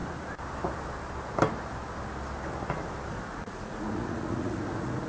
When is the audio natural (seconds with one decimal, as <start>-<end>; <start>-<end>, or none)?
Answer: 0.0-3.1